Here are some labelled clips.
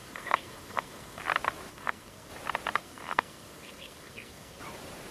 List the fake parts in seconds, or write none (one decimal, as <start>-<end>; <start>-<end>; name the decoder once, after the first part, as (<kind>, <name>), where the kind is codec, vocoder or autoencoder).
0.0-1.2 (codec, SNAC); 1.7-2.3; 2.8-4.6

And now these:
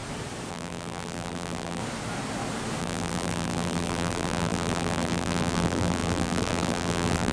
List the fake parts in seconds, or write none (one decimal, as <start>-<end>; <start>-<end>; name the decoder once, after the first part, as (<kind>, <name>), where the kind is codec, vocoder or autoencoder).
0.5-1.8 (vocoder, BigVGAN v2); 2.8-7.3

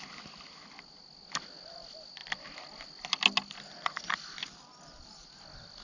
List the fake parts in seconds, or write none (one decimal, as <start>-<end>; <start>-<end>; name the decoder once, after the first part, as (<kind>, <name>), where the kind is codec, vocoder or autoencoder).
none

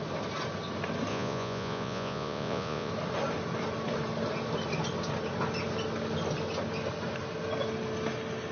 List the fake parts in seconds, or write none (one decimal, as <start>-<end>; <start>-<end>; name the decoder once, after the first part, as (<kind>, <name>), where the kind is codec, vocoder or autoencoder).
1.1-2.9 (vocoder, Vocos)

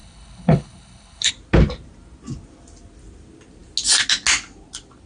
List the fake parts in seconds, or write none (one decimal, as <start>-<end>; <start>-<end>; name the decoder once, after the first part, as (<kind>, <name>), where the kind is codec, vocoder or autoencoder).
0.0-1.3 (codec, HILCodec)

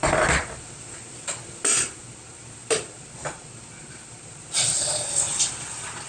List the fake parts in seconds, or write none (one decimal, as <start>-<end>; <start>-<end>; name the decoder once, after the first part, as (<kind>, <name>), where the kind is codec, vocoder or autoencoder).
none

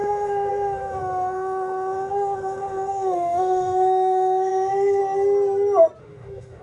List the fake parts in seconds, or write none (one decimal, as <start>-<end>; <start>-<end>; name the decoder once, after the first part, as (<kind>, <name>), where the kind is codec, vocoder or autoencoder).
0.0-5.0 (autoencoder, DAC-VAE); 6.0-6.6